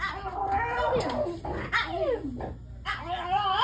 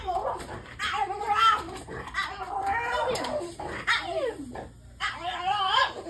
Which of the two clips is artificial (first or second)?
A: second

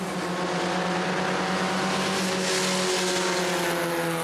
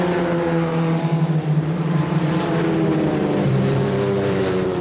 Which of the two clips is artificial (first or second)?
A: second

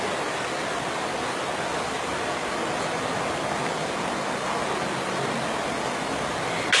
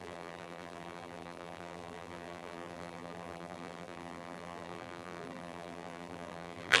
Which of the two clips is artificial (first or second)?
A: second